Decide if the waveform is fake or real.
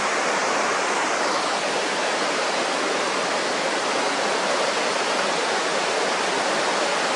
real